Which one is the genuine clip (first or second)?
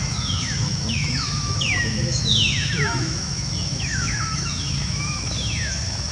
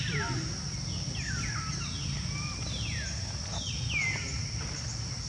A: second